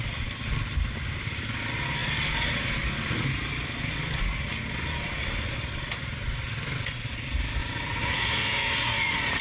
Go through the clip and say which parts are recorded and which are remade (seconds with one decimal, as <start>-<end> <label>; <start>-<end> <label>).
0.0-7.6 recorded; 7.6-9.4 remade